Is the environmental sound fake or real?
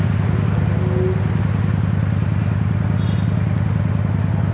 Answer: real